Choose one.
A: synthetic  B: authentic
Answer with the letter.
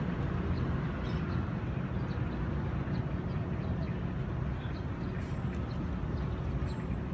B